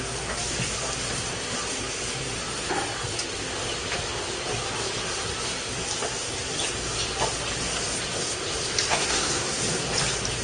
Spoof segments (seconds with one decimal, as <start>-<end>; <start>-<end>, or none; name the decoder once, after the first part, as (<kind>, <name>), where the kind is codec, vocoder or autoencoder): 8.9-9.6 (codec, SNAC)